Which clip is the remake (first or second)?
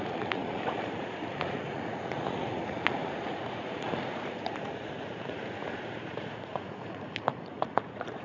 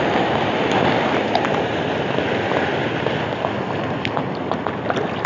first